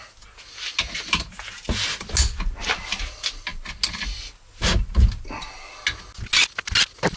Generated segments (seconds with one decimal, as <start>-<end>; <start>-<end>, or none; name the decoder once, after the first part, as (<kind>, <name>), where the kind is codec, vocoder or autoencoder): none